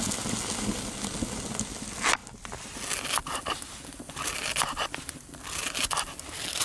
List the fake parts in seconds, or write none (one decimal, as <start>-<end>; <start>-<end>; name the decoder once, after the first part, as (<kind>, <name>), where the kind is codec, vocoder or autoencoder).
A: none